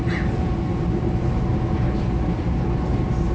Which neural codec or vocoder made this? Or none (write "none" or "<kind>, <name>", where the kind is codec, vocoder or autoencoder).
none